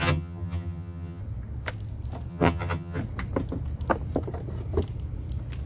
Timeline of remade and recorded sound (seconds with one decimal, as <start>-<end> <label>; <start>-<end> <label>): 0.0-1.2 remade; 1.2-2.3 recorded; 2.3-3.0 remade; 3.0-5.7 recorded